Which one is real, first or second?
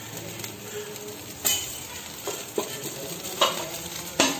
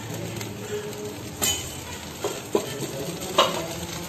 second